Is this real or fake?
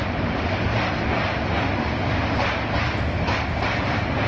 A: real